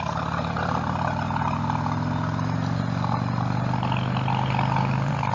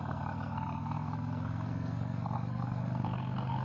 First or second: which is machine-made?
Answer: second